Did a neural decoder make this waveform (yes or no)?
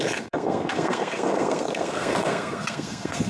yes